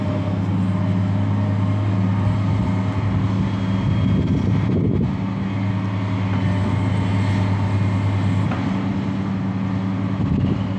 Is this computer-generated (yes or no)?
no